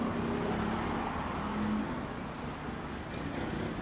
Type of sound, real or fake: real